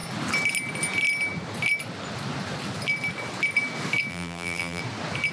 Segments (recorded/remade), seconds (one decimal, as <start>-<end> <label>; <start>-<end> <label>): 0.0-4.1 recorded; 4.1-4.8 remade; 4.8-5.3 recorded